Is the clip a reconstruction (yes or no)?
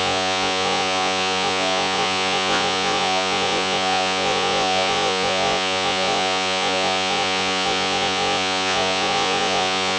yes